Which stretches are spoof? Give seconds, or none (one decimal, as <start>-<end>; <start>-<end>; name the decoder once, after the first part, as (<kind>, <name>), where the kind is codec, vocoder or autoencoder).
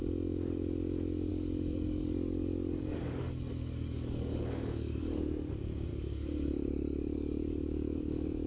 1.3-5.5 (codec, DAC); 5.9-8.5